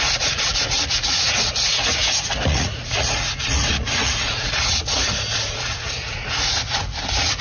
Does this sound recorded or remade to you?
remade